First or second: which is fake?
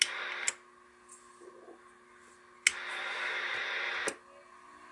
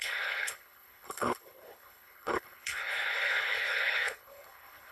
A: second